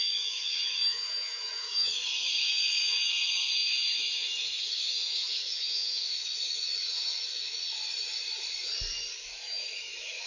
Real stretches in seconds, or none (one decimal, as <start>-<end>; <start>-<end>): 7.6-9.1